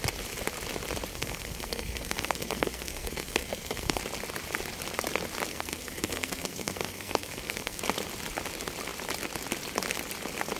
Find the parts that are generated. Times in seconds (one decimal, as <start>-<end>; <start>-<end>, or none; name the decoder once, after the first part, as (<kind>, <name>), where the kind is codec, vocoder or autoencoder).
1.1-4.0 (codec, SNAC); 5.5-7.8